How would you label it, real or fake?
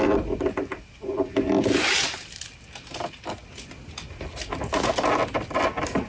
real